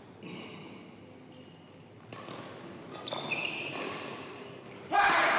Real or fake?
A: real